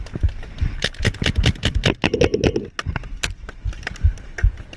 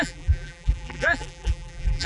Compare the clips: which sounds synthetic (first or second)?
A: second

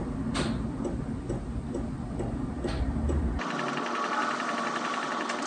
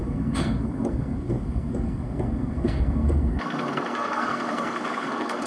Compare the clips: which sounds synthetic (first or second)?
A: second